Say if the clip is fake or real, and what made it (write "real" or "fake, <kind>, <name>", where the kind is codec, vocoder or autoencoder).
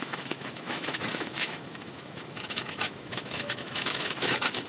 fake, autoencoder, DAC-VAE